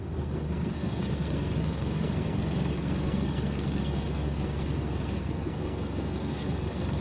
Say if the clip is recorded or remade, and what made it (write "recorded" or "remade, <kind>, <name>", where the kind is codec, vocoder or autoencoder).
remade, codec, SNAC